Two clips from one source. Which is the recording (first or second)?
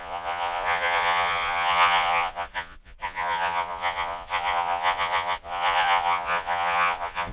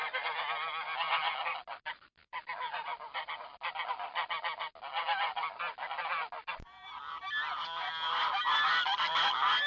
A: second